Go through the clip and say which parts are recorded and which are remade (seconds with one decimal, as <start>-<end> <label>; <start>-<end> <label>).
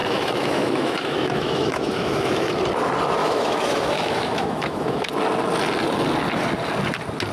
0.0-2.6 remade; 2.6-3.2 recorded; 3.2-5.1 remade; 5.1-7.3 recorded